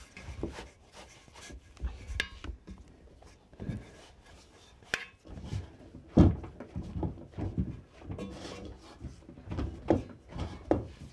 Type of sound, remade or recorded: recorded